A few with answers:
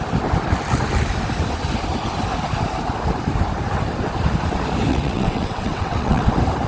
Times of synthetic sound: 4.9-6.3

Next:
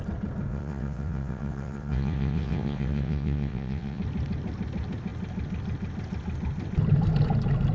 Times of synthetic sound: 0.5-4.0

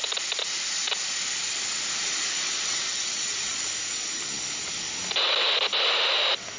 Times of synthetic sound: 2.4-3.7

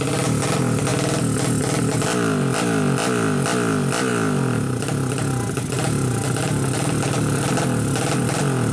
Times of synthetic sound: none

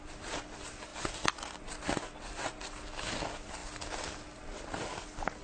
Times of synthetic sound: none

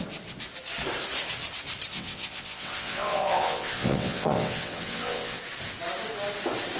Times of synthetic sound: 1.9-5.4

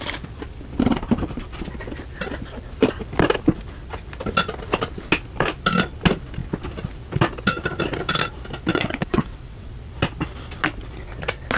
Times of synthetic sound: 8.7-9.7